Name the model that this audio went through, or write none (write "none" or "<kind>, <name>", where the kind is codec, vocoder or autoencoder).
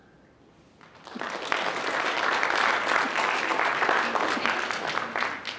none